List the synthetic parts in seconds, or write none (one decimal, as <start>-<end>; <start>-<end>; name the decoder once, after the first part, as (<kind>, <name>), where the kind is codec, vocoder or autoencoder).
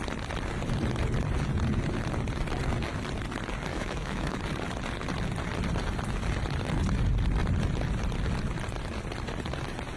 3.7-4.4 (autoencoder, DAC-VAE)